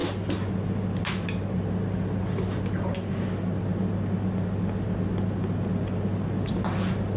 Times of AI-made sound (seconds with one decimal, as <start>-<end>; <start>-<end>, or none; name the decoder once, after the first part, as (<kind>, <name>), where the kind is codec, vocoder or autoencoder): none